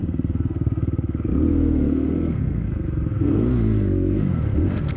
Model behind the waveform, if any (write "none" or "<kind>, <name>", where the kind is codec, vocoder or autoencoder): codec, SNAC